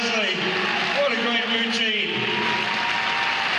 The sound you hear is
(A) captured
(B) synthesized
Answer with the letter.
A